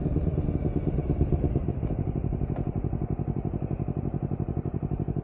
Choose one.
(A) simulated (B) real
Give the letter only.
B